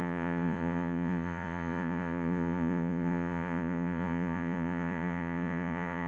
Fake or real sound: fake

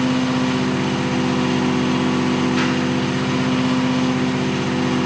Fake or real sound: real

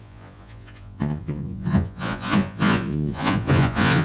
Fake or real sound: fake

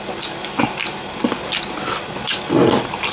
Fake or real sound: real